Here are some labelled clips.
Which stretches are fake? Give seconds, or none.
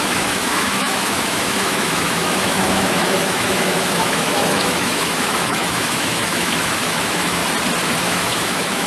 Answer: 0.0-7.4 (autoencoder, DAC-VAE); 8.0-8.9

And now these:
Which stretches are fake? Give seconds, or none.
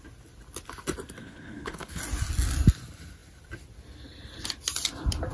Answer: 1.2-2.0 (codec, HILCodec)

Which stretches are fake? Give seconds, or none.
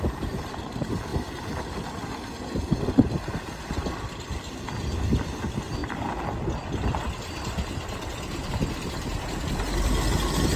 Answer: 0.0-1.1 (vocoder, BigVGAN v2); 4.0-10.6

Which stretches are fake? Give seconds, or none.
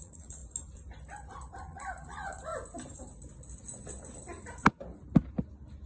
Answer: 0.0-0.4 (vocoder, Vocos); 1.6-2.5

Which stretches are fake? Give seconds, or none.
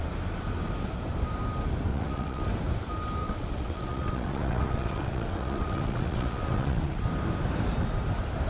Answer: 1.9-2.4 (vocoder, WaveNeXt); 3.2-7.0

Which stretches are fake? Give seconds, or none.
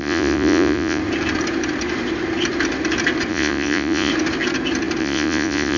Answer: 0.0-1.0 (vocoder, Vocos); 3.3-4.1; 5.0-5.8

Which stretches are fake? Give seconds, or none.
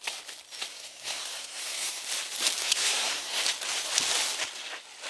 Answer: 0.7-2.0 (codec, SNAC); 2.6-3.4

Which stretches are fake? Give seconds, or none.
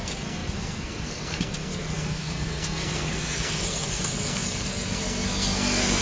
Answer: 0.0-6.0 (codec, SNAC)